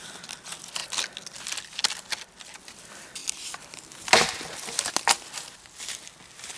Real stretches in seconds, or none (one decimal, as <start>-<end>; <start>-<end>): 0.0-6.6